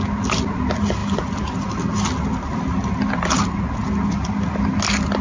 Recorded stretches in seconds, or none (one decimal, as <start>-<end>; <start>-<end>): 0.0-5.2